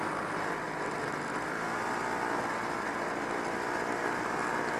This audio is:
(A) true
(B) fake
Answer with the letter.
A